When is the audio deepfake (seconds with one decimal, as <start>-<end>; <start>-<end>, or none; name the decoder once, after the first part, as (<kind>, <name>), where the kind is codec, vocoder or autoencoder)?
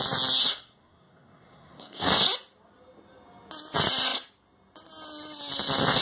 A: 0.4-2.1 (codec, SNAC)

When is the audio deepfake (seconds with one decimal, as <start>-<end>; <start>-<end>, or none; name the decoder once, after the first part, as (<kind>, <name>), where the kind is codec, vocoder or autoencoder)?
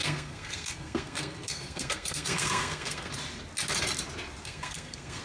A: 0.0-3.1 (codec, SNAC); 4.4-5.2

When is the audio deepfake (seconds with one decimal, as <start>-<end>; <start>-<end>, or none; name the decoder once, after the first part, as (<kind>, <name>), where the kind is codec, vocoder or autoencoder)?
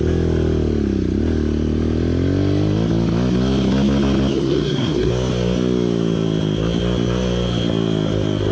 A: 4.3-5.1 (codec, SNAC)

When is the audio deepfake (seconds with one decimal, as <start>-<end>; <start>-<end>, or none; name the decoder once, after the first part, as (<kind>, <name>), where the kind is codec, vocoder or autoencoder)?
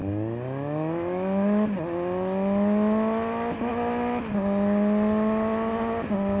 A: none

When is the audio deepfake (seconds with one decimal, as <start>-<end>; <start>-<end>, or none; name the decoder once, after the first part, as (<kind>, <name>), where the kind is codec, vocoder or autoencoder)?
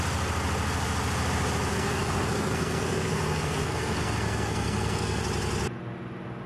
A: 1.7-5.2 (codec, SNAC)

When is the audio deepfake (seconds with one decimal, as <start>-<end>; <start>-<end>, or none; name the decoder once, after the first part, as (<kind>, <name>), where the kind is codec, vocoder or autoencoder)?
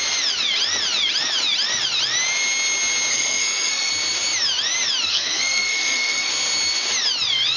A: 3.1-3.9 (codec, SNAC); 5.1-6.3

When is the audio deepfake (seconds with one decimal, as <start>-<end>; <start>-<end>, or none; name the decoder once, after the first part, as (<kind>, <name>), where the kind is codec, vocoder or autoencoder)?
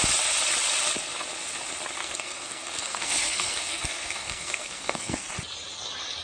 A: 2.0-5.3 (codec, SNAC)